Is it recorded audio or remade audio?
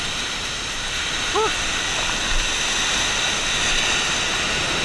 recorded